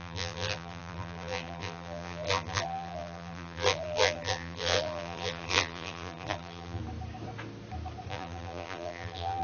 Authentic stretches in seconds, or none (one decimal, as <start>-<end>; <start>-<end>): 6.8-8.1